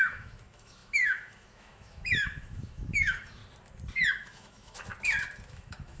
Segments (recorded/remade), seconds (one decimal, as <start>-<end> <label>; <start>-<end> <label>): 0.0-3.4 remade; 3.4-4.1 recorded; 4.1-4.9 remade; 4.9-5.5 recorded; 5.5-6.0 remade